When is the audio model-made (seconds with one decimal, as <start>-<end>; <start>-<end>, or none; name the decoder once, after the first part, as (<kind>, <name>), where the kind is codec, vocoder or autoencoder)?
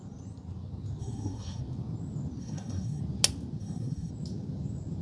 1.0-1.6 (codec, SNAC); 2.4-3.0; 3.6-4.1